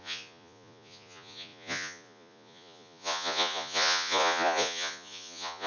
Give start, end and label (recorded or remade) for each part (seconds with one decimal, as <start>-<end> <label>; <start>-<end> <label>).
0.0-5.7 remade